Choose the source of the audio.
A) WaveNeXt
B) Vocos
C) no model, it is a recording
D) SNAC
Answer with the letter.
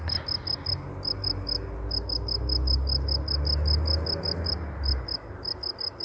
C